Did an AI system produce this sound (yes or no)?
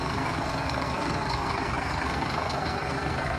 yes